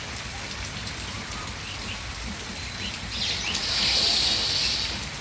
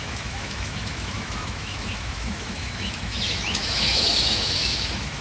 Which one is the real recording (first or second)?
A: first